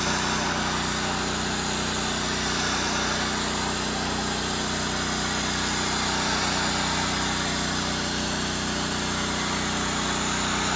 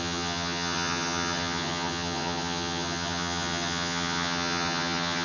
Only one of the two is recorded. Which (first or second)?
first